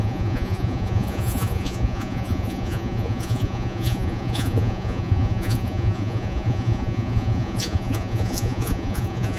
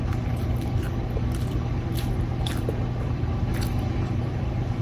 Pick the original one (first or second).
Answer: second